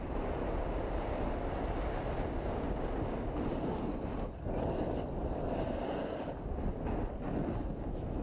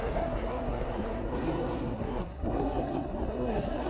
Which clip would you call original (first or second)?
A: first